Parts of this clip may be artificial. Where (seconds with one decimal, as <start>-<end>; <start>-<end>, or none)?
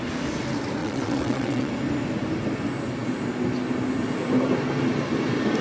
0.8-1.7